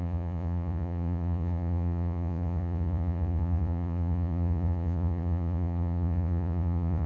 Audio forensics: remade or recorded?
remade